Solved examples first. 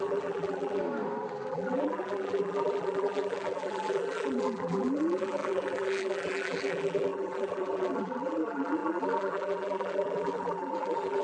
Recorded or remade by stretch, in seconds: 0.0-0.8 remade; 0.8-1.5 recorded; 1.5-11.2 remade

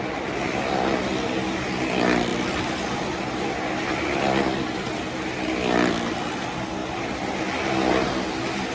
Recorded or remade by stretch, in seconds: 0.0-8.7 recorded

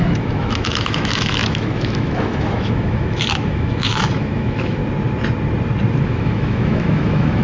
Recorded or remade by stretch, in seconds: 0.0-4.8 remade; 4.8-6.0 recorded; 6.0-7.4 remade

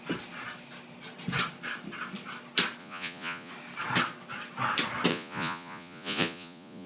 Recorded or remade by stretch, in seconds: 0.0-2.8 recorded; 2.8-3.5 remade; 3.5-5.1 recorded; 5.1-6.9 remade

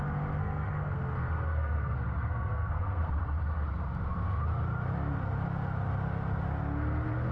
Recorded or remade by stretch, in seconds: 0.0-0.4 recorded; 0.4-3.1 remade; 3.1-7.3 recorded